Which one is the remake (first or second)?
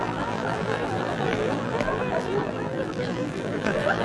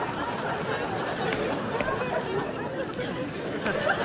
first